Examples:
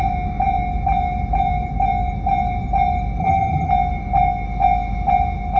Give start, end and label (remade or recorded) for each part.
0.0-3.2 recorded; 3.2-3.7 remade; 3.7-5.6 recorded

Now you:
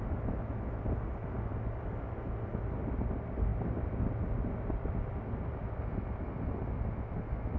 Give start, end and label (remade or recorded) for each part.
0.0-7.6 recorded

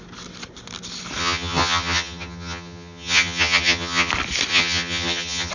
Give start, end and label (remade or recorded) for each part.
0.0-1.2 recorded; 1.2-4.1 remade; 4.1-4.5 recorded; 4.5-5.5 remade

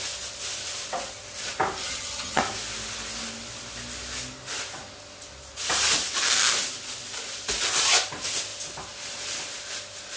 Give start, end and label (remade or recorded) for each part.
0.0-1.8 recorded; 1.8-2.4 remade; 2.4-10.2 recorded

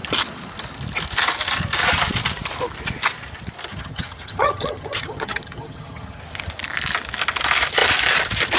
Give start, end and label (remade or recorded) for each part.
0.0-3.7 recorded; 3.7-6.2 remade; 6.2-8.6 recorded